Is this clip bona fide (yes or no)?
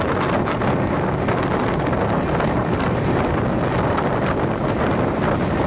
yes